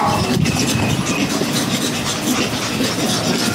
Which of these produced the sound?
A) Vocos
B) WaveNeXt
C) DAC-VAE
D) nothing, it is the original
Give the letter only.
D